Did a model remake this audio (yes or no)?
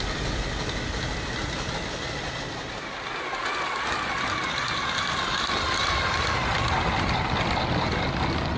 no